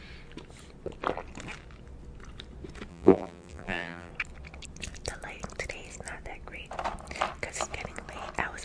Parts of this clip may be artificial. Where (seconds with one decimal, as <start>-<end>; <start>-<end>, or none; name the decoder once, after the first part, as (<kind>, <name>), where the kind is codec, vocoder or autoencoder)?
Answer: 2.9-4.1 (vocoder, BigVGAN v2)